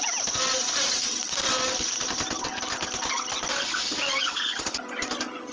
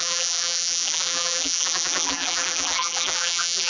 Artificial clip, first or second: second